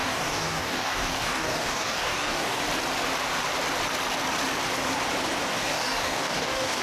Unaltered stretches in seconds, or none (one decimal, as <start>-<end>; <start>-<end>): 2.6-5.5